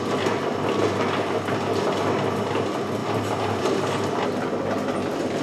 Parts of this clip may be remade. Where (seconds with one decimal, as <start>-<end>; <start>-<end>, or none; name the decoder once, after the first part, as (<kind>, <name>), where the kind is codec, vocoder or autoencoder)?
3.0-3.9 (vocoder, BigVGAN v2)